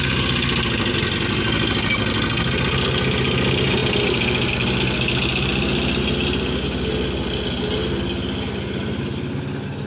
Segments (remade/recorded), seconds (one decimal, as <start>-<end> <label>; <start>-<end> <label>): 0.0-3.8 recorded; 3.8-4.5 remade; 4.5-9.9 recorded